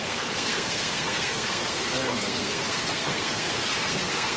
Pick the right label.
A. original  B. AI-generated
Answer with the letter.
B